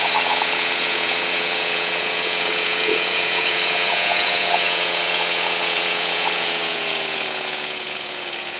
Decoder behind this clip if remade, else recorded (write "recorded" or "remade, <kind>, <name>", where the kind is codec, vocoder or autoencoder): remade, vocoder, Vocos